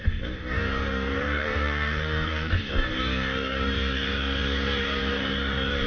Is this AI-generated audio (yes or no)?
yes